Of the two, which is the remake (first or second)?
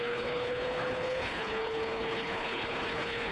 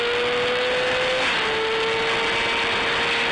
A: first